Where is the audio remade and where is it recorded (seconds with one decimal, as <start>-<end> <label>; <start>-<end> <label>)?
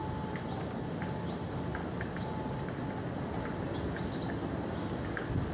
0.0-5.5 recorded